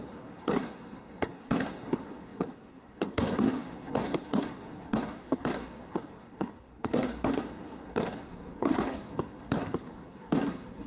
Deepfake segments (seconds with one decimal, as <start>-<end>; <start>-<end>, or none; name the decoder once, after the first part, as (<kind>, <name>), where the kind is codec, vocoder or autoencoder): 0.0-10.9 (codec, SNAC)